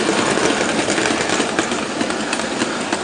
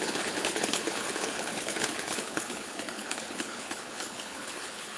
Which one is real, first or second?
first